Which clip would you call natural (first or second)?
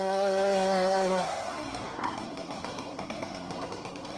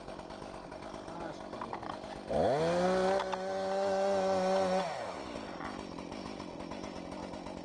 second